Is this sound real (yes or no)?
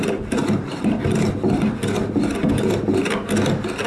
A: yes